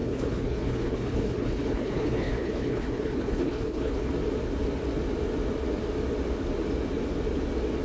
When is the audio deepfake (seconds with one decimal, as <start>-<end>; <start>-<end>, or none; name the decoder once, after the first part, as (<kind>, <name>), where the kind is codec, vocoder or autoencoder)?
0.0-4.1 (codec, HILCodec)